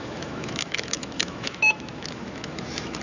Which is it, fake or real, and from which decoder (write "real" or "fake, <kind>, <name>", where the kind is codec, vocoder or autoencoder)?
fake, autoencoder, DAC-VAE